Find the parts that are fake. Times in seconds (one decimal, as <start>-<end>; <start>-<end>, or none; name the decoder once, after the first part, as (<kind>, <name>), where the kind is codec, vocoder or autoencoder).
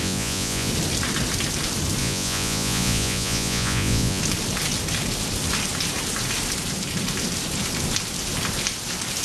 0.0-0.7 (vocoder, Vocos); 2.0-4.2